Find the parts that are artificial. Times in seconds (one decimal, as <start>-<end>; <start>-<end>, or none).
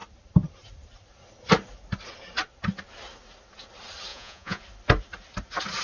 4.1-4.6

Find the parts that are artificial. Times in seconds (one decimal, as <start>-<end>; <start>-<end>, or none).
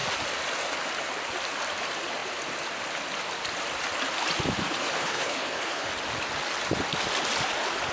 5.0-5.9